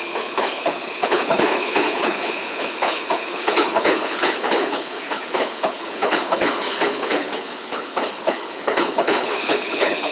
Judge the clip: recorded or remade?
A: remade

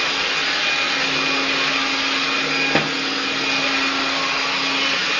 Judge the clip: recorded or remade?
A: recorded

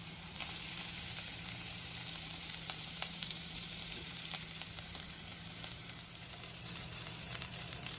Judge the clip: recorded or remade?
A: remade